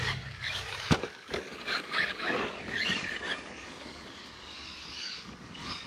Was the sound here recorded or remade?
remade